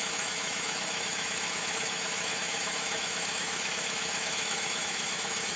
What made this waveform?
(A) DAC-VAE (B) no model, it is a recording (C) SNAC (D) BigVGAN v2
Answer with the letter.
A